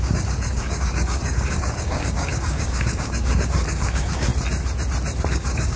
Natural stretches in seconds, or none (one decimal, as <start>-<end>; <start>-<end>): 4.3-5.3

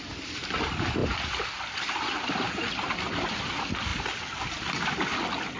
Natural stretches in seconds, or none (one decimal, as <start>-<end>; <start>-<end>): 0.0-3.9; 5.0-5.6

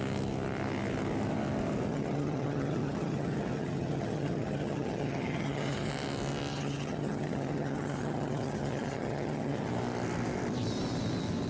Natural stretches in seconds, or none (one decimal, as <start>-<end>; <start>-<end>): 0.0-1.9; 5.9-6.5; 9.7-11.5

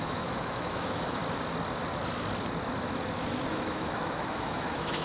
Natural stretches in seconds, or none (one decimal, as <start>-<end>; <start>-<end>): 1.2-3.5

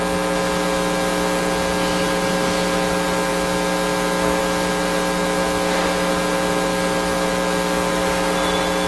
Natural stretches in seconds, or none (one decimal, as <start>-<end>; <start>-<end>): 0.0-8.9

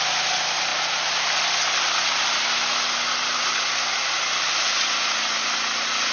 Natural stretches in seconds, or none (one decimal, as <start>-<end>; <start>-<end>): 0.0-6.1